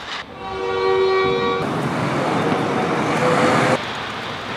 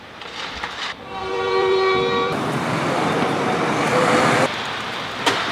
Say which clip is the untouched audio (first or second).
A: first